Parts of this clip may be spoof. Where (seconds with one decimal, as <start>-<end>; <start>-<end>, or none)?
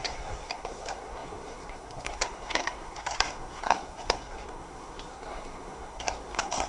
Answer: 0.0-6.7